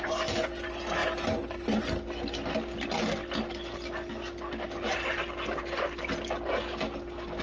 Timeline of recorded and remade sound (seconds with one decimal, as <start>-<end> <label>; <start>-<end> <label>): 0.0-7.4 recorded